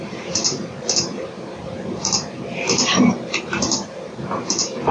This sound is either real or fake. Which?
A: fake